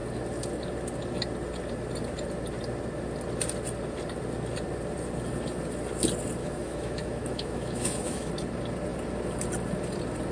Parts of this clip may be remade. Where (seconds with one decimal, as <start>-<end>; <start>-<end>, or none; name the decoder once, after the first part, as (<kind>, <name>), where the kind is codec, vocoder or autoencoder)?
6.4-8.3 (autoencoder, DAC-VAE)